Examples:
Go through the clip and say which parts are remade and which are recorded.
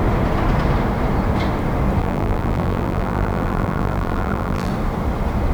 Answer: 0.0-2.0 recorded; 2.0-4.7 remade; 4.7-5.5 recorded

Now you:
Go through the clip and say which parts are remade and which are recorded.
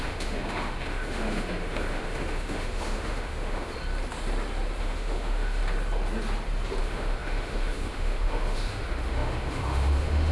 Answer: 0.0-3.7 remade; 3.7-4.8 recorded; 4.8-5.6 remade; 5.6-6.8 recorded; 6.8-10.3 remade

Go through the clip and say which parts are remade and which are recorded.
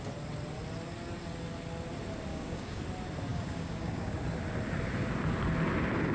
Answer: 0.0-2.3 recorded; 2.3-2.8 remade; 2.8-3.3 recorded; 3.3-4.2 remade; 4.2-6.1 recorded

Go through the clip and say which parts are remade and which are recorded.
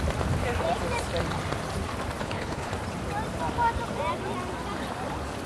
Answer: 0.0-2.2 recorded; 2.2-2.7 remade; 2.7-5.5 recorded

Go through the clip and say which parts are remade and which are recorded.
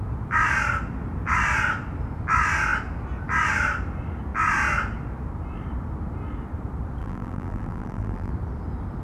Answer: 0.0-7.0 recorded; 7.0-8.3 remade; 8.3-9.0 recorded